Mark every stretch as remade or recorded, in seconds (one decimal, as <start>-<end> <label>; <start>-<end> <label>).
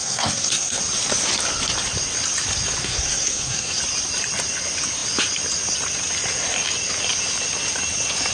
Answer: 0.0-0.8 remade; 0.8-2.8 recorded; 2.8-3.8 remade; 3.8-8.3 recorded